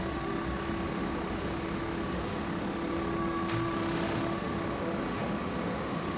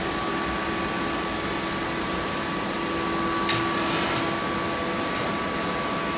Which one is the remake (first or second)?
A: first